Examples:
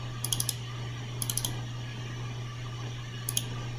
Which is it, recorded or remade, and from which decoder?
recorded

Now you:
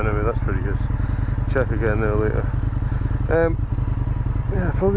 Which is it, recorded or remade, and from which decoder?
recorded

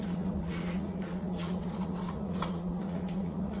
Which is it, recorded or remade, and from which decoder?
remade, vocoder, Vocos